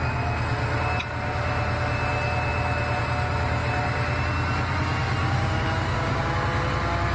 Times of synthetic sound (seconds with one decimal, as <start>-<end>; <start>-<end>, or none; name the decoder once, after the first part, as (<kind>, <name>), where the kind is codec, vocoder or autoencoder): 5.2-6.2 (codec, DAC)